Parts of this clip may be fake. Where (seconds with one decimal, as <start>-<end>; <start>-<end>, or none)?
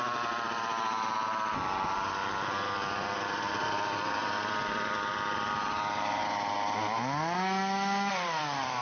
0.0-0.7; 1.5-6.2; 8.1-8.8